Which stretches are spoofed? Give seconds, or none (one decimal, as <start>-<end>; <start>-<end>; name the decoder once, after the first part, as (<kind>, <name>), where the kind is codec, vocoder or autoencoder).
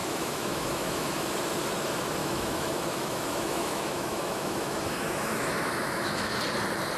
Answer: 0.0-1.3 (autoencoder, DAC-VAE); 2.2-6.4